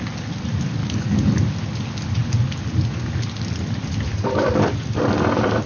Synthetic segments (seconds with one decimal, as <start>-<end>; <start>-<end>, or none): 0.8-1.3; 4.1-5.0